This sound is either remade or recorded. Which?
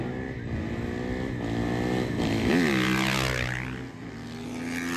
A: recorded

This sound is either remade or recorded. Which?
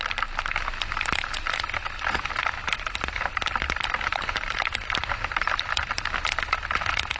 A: recorded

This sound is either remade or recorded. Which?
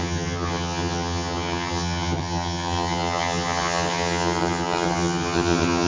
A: remade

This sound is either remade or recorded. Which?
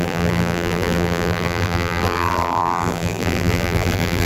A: remade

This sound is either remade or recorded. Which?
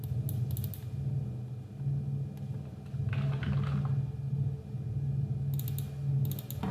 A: recorded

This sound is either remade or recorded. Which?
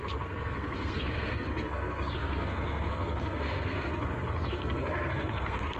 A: remade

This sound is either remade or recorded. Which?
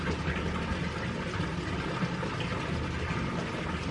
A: recorded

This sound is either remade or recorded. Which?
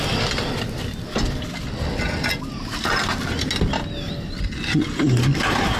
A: recorded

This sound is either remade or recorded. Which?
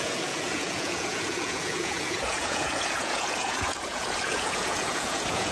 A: remade